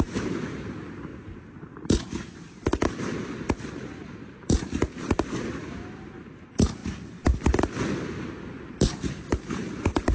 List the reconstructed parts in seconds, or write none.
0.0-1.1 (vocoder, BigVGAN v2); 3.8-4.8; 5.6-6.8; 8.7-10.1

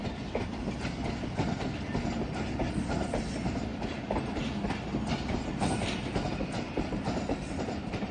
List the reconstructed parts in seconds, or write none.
2.6-3.7 (vocoder, BigVGAN v2); 4.9-8.1

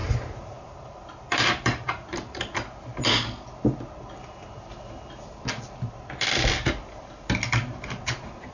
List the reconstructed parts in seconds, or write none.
0.0-2.9 (vocoder, BigVGAN v2); 8.0-8.5

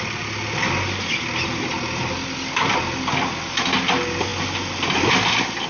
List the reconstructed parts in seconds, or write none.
none